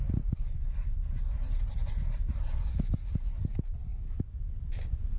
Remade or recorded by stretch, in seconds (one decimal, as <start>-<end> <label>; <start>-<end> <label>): 0.0-5.2 recorded